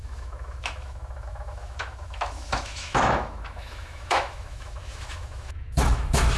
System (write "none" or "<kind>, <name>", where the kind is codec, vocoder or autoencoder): autoencoder, DAC-VAE